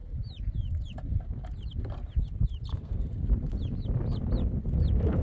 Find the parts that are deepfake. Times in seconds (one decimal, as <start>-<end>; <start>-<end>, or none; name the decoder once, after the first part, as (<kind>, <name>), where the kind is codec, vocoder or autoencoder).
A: 2.7-3.2 (codec, SNAC)